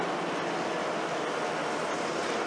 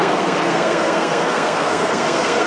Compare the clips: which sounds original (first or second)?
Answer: first